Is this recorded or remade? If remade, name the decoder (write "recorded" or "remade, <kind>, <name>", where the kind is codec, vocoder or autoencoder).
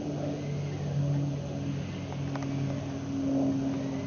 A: recorded